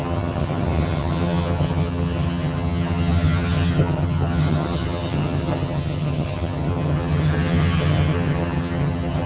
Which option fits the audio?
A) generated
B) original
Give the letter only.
A